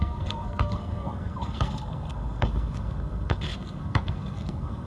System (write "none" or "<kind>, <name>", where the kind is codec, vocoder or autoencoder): codec, SNAC